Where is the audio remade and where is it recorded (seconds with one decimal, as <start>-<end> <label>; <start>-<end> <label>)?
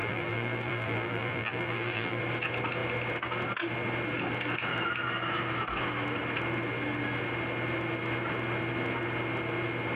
0.0-2.2 remade; 2.2-10.0 recorded